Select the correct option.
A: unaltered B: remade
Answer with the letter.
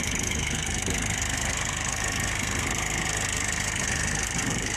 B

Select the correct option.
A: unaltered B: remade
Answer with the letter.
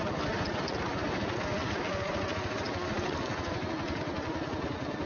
A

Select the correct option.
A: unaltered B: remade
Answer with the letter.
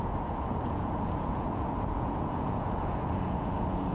B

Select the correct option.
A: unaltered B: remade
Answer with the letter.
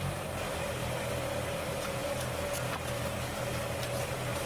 A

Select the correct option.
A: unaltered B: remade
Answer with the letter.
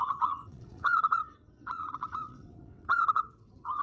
B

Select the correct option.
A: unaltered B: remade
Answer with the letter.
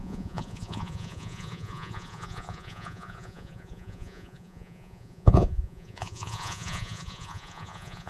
B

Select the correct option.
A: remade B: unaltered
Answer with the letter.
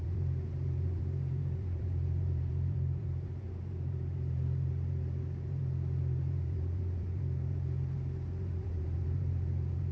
A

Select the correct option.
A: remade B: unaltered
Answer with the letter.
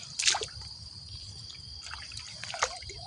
B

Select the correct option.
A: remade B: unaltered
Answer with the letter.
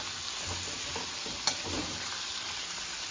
B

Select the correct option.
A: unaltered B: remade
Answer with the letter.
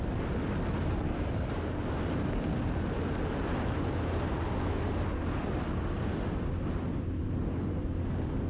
A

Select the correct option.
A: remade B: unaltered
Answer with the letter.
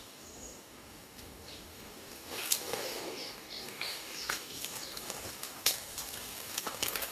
A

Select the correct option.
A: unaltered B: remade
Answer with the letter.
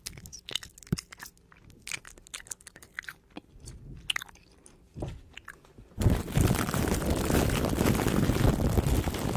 A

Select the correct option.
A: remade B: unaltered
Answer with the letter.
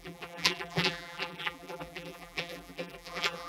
A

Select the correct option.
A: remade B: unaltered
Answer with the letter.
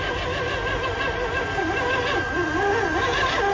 B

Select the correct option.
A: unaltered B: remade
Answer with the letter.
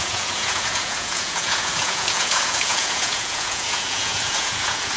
B